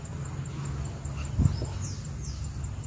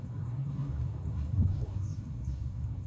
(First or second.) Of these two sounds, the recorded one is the first